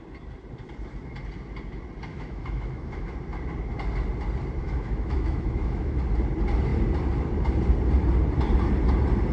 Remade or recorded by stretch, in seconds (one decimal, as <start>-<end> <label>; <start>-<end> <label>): 0.0-2.1 recorded; 2.1-3.1 remade; 3.1-4.6 recorded; 4.6-6.0 remade; 6.0-9.3 recorded